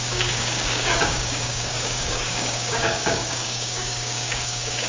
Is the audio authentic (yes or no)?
no